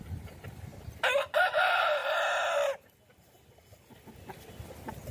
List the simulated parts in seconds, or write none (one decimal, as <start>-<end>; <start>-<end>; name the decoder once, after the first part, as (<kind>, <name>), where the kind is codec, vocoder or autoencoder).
0.0-0.7 (vocoder, BigVGAN v2); 1.3-2.0